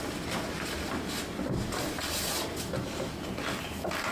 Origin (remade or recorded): recorded